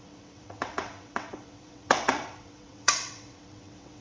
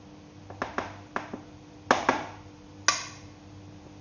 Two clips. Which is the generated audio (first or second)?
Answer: first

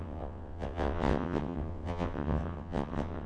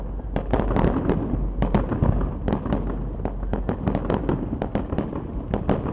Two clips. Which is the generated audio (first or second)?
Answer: first